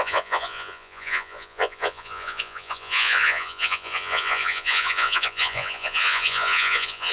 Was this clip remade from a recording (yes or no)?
yes